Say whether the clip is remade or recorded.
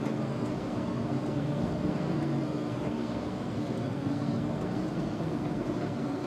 remade